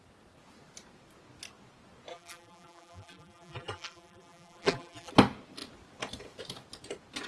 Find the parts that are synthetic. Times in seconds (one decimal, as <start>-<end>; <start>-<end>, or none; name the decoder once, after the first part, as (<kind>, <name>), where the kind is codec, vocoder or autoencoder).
2.1-5.1 (vocoder, BigVGAN v2)

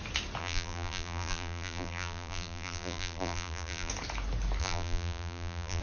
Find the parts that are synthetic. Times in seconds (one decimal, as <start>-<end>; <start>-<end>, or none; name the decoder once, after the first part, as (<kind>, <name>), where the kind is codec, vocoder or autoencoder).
0.4-3.9 (vocoder, BigVGAN v2); 4.6-5.8

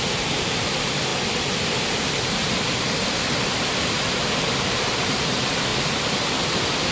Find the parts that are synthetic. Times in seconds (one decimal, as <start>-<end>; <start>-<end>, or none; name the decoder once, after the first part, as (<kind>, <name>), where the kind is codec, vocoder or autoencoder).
0.0-1.1 (vocoder, BigVGAN v2); 3.5-5.7; 6.3-6.9